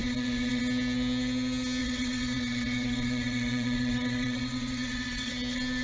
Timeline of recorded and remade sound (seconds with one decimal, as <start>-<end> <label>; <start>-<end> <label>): 0.0-0.6 remade; 0.6-1.8 recorded; 1.8-5.3 remade; 5.3-5.8 recorded